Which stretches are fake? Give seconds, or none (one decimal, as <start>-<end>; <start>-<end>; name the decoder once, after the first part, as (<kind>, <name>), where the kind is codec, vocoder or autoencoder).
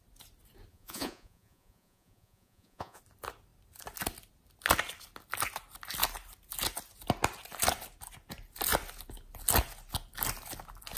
0.7-3.0 (vocoder, Vocos)